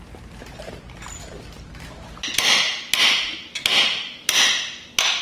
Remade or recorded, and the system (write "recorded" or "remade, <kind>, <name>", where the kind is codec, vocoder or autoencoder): recorded